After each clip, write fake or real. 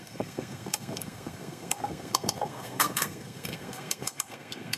fake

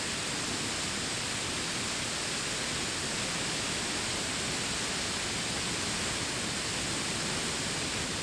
real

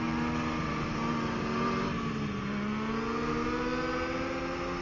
real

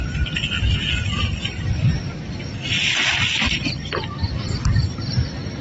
real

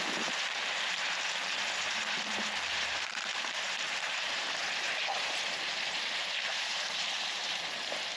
fake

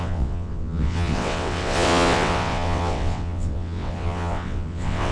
fake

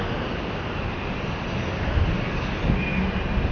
real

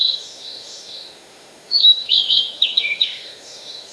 fake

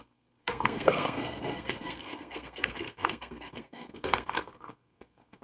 fake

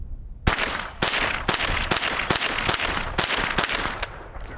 real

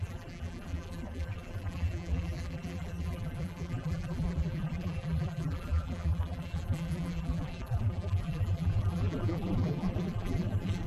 fake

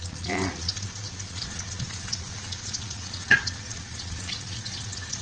fake